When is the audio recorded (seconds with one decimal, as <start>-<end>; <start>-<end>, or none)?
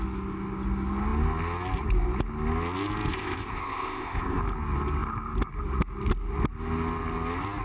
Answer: 0.0-3.1; 4.4-7.6